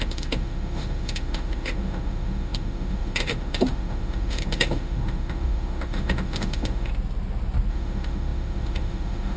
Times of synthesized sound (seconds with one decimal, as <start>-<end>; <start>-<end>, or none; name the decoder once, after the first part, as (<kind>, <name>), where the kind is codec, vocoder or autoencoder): 0.0-6.9 (autoencoder, DAC-VAE); 7.7-9.4